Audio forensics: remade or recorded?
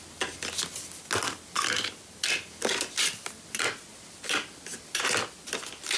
recorded